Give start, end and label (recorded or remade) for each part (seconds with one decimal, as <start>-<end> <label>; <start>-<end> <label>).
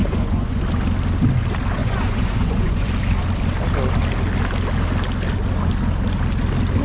0.0-0.6 remade; 0.6-1.8 recorded; 1.8-2.9 remade; 2.9-6.8 recorded